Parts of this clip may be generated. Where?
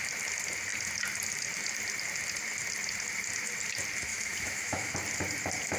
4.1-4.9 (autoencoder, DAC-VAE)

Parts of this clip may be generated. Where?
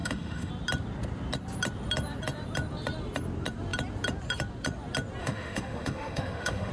0.0-0.5 (autoencoder, DAC-VAE); 5.2-6.7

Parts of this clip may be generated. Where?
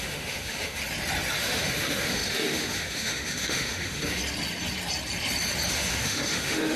0.0-0.8 (autoencoder, DAC-VAE); 1.4-4.2; 5.7-6.8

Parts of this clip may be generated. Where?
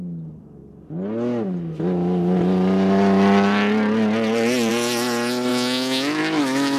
5.5-6.8 (autoencoder, DAC-VAE)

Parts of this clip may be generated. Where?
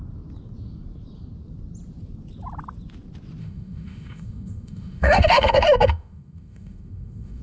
3.4-7.4 (autoencoder, DAC-VAE)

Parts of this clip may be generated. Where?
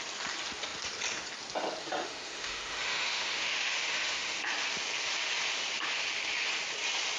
1.8-4.4 (autoencoder, DAC-VAE)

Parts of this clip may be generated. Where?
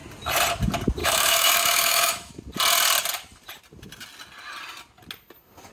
1.0-2.3 (autoencoder, DAC-VAE)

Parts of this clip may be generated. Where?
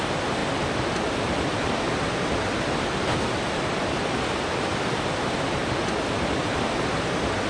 none